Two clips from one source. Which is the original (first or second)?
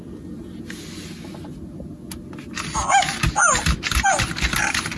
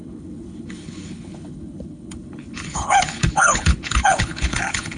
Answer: first